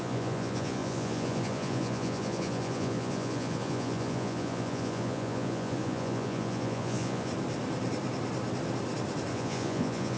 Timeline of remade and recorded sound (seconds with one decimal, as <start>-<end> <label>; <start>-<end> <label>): 0.0-7.3 remade; 7.3-9.3 recorded; 9.3-10.2 remade